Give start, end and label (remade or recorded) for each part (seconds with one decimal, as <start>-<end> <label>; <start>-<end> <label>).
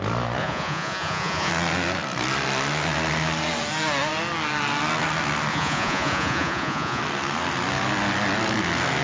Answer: 0.0-0.4 recorded; 0.4-1.5 remade; 1.5-5.5 recorded; 5.5-7.0 remade; 7.0-9.0 recorded